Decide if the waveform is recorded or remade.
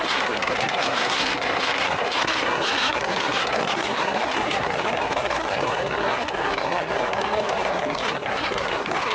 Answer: remade